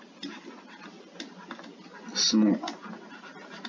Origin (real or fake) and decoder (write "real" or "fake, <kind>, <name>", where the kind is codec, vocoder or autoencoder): real